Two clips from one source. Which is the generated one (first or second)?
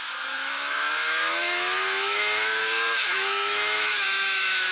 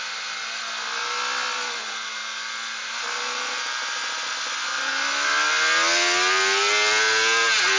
first